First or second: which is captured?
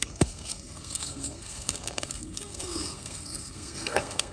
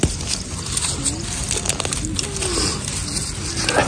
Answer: second